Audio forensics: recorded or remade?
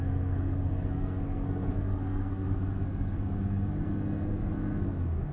remade